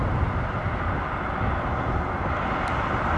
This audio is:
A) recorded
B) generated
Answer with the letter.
A